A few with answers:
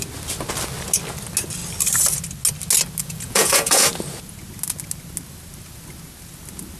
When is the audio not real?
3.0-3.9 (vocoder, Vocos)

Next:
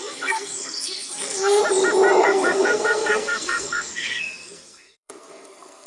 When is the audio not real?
0.0-1.6 (codec, SNAC); 2.2-5.9

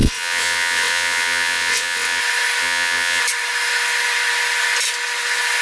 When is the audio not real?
0.0-2.2 (vocoder, WaveNeXt); 2.6-3.2

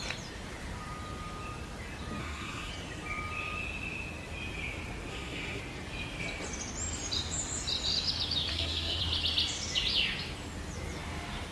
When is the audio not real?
2.2-2.7 (codec, SNAC); 5.1-5.6; 8.5-9.0

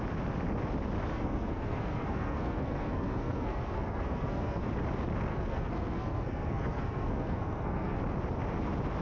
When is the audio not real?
1.1-4.7 (codec, SNAC); 5.3-8.0

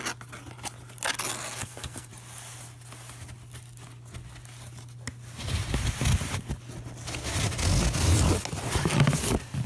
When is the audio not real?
1.4-2.1 (codec, SNAC)

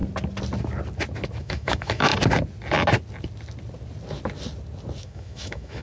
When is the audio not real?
1.4-2.1 (autoencoder, DAC-VAE); 5.0-5.8